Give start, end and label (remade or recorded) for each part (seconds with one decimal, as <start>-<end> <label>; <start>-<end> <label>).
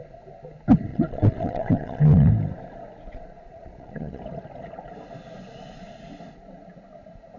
0.0-0.9 recorded; 0.9-2.3 remade; 2.3-3.1 recorded; 3.1-4.2 remade; 4.2-7.4 recorded